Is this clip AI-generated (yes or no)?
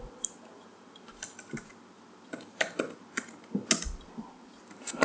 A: no